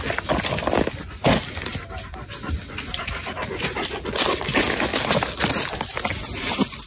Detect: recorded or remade recorded